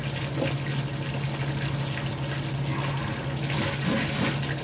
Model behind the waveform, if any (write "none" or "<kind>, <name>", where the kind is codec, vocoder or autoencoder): none